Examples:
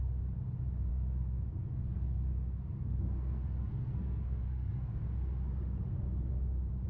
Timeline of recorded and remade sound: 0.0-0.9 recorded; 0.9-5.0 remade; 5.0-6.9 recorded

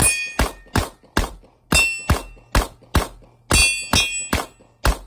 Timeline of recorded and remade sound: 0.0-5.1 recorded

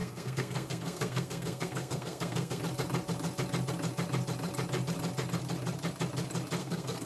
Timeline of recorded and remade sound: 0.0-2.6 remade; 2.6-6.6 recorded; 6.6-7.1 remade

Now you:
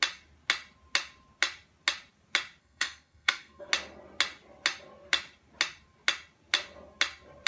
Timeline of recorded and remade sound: 0.0-2.6 recorded; 2.6-3.7 remade; 3.7-7.5 recorded

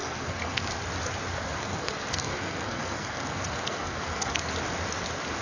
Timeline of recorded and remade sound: 0.0-0.7 remade; 0.7-1.3 recorded; 1.3-4.5 remade; 4.5-5.4 recorded

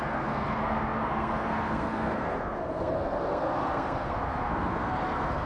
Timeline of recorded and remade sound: 0.0-5.5 remade

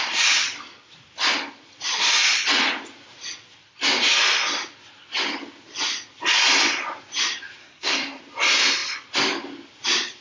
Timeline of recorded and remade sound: 0.0-7.6 recorded; 7.6-8.2 remade; 8.2-10.2 recorded

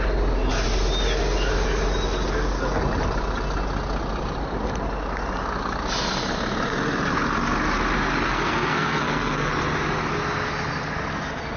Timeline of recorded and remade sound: 0.0-8.3 recorded; 8.3-9.5 remade; 9.5-11.6 recorded